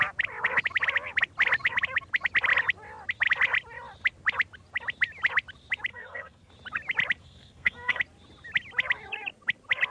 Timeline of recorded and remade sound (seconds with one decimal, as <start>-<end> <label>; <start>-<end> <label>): 0.0-5.9 recorded; 5.9-6.5 remade; 6.5-7.2 recorded; 7.2-8.0 remade; 8.0-9.9 recorded